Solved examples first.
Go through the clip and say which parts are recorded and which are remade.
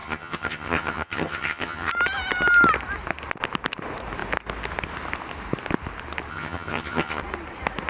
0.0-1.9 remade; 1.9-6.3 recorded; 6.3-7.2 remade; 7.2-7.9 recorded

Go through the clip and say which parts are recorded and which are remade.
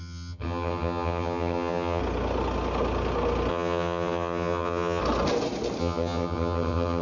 0.0-2.0 remade; 2.0-3.5 recorded; 3.5-5.0 remade; 5.0-5.8 recorded; 5.8-7.0 remade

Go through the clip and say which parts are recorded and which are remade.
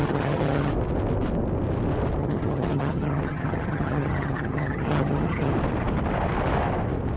0.0-0.7 remade; 0.7-2.2 recorded; 2.2-5.5 remade; 5.5-7.2 recorded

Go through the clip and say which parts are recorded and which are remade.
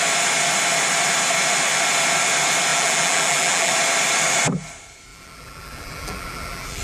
0.0-2.7 recorded; 2.7-3.7 remade; 3.7-5.1 recorded; 5.1-6.8 remade